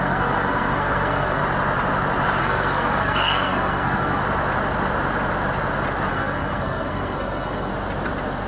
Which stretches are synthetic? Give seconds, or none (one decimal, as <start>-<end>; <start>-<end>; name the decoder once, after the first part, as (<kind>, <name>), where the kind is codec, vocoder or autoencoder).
0.0-1.4 (codec, SNAC); 2.4-4.2; 6.1-7.7